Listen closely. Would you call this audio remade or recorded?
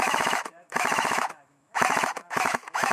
remade